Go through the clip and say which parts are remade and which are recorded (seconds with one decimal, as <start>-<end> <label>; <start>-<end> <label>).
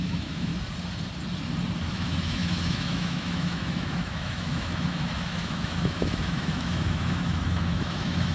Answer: 0.0-0.5 remade; 0.5-1.9 recorded; 1.9-8.3 remade